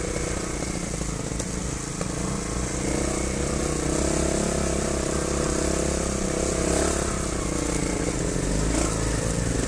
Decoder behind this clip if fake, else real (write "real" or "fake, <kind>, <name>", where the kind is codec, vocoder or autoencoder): real